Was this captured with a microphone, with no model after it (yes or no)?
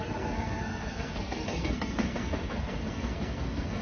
no